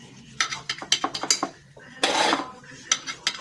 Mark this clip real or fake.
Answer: real